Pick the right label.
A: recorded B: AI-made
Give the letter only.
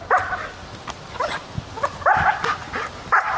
A